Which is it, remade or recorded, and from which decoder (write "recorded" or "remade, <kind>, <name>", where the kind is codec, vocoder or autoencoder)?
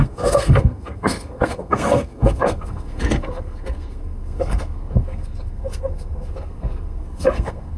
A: remade, codec, SNAC